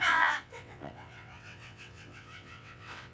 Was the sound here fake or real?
fake